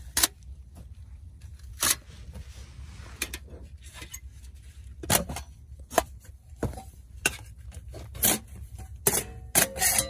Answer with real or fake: real